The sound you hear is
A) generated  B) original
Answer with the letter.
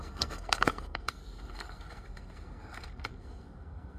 A